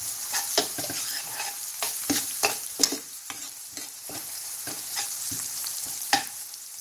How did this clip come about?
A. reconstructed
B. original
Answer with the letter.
A